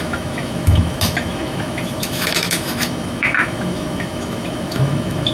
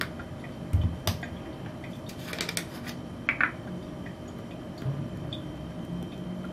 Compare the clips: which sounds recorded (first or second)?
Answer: second